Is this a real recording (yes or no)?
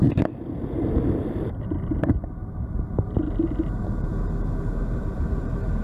no